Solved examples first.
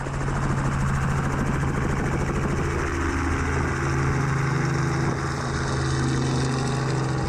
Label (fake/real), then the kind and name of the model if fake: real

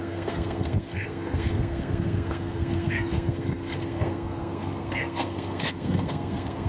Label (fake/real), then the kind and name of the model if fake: fake, codec, SNAC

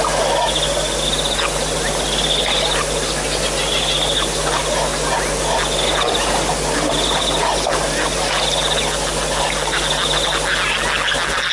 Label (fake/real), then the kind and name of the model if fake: real